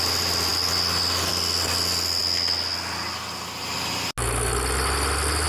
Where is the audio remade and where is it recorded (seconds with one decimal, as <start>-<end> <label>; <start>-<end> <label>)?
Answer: 0.0-5.5 recorded